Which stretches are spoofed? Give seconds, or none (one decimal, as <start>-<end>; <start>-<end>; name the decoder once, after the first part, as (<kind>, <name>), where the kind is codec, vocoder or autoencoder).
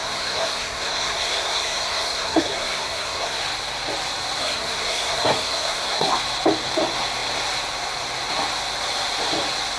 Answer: 0.0-3.4 (codec, SNAC); 4.4-6.1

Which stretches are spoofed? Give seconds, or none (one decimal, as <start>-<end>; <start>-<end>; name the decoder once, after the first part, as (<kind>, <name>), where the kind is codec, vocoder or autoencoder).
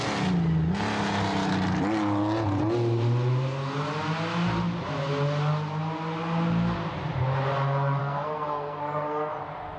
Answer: 8.0-9.3 (codec, SNAC)